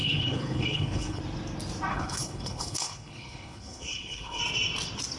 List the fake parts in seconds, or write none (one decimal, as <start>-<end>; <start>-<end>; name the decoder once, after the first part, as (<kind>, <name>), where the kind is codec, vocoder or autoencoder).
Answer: 0.0-1.2 (codec, HILCodec); 1.9-4.4